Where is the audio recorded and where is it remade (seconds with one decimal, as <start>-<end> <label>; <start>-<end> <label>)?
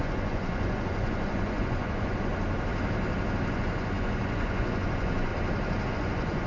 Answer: 0.0-2.3 remade; 2.3-3.5 recorded; 3.5-5.3 remade; 5.3-5.9 recorded; 5.9-6.5 remade